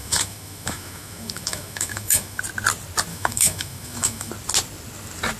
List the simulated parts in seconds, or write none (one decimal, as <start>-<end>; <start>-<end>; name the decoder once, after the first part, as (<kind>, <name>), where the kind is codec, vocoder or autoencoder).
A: 0.0-2.4 (autoencoder, DAC-VAE); 3.1-4.3